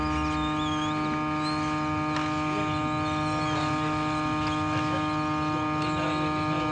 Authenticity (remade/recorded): recorded